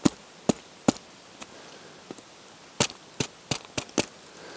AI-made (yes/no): no